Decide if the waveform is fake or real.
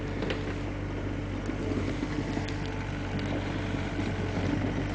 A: real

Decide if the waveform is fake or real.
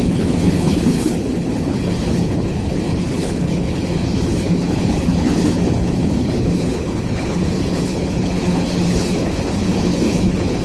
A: fake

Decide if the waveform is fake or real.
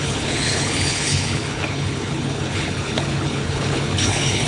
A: fake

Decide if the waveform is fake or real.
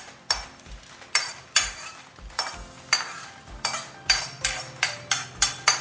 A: real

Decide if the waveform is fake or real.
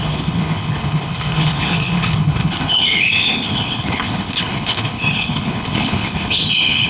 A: fake